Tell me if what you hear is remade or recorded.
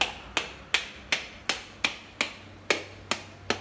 recorded